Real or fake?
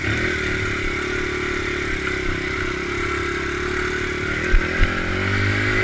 real